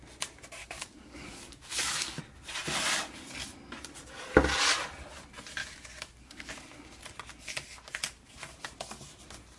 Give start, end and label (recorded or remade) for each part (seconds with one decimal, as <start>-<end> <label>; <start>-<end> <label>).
0.0-0.6 recorded; 0.6-2.2 remade; 2.2-5.6 recorded; 5.6-6.5 remade; 6.5-9.6 recorded